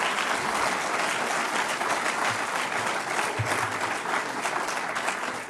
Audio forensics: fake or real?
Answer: real